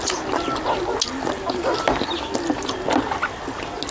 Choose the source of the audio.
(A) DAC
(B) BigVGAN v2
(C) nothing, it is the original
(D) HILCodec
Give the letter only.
C